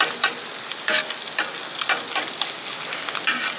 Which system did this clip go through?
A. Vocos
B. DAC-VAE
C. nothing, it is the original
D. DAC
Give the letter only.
C